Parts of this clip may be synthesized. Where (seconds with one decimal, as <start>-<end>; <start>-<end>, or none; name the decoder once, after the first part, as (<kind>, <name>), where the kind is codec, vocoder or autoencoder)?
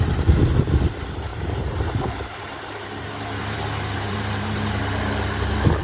1.3-4.8 (vocoder, BigVGAN v2)